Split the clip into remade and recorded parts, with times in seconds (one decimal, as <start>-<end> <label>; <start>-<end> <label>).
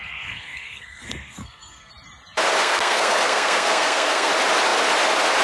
0.0-1.9 remade; 1.9-2.6 recorded; 2.6-4.3 remade; 4.3-5.4 recorded